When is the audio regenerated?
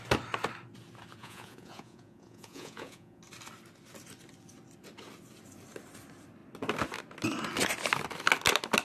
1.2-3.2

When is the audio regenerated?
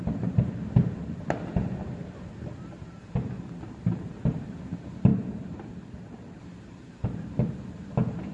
none